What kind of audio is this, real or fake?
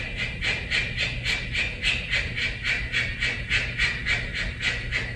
real